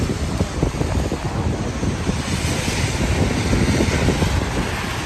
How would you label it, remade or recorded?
recorded